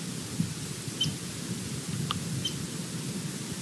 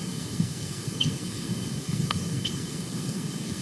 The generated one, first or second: second